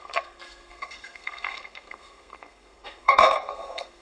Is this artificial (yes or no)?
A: yes